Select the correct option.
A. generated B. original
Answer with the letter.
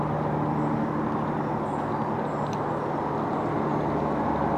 B